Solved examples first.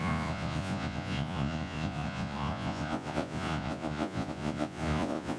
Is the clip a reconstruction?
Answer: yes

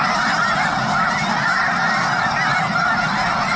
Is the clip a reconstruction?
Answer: no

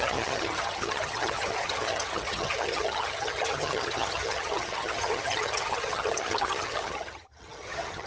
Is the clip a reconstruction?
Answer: yes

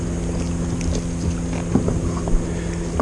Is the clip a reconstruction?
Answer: no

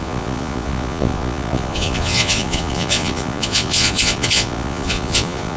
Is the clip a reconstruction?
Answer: yes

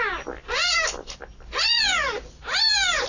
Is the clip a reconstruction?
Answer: no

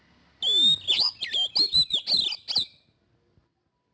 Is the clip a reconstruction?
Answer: no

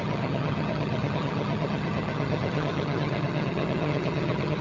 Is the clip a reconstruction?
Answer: yes